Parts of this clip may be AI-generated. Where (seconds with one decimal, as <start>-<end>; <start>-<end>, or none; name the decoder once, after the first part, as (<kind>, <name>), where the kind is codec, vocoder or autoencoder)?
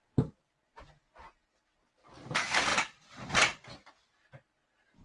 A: 2.7-4.3 (vocoder, BigVGAN v2)